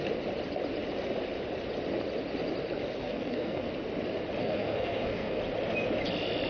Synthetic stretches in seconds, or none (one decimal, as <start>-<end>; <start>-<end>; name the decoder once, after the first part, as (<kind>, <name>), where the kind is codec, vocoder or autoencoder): 3.0-3.7 (codec, SNAC); 4.4-5.4